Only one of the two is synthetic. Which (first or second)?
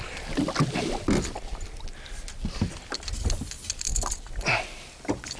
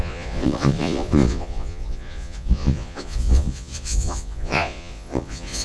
second